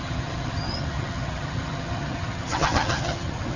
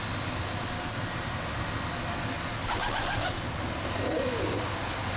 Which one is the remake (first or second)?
first